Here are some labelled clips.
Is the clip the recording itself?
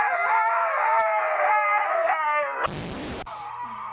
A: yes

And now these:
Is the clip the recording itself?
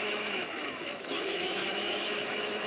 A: no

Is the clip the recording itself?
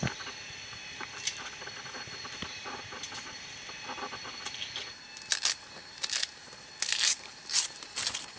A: yes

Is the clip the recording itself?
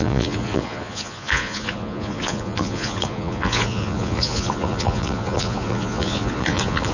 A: no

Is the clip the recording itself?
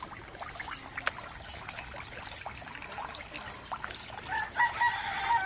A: yes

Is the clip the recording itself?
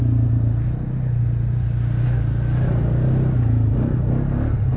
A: yes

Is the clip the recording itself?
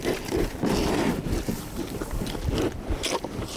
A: yes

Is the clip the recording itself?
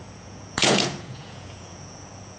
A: no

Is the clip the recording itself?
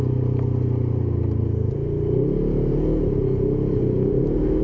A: yes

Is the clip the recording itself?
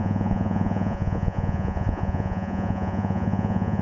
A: no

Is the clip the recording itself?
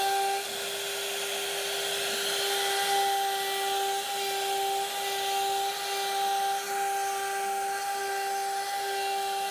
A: yes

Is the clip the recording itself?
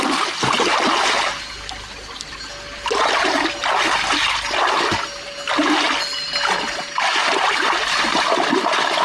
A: yes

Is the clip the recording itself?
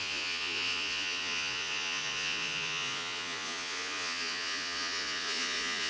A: no